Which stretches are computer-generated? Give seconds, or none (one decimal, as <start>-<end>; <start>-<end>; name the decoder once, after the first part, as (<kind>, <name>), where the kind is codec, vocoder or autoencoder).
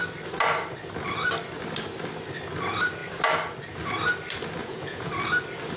4.6-5.1 (vocoder, Vocos)